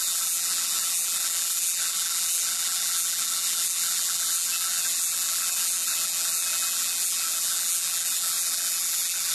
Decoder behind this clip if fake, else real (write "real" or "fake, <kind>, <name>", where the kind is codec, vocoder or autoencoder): fake, vocoder, BigVGAN v2